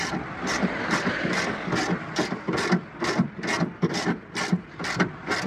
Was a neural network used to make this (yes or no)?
no